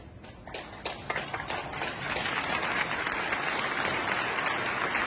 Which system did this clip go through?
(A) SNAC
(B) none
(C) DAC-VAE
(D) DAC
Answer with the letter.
B